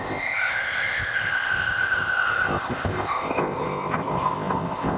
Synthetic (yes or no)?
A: yes